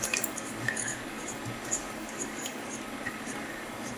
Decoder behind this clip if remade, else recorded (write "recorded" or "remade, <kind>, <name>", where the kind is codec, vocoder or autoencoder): remade, codec, DAC